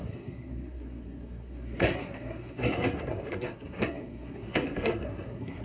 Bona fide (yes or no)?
no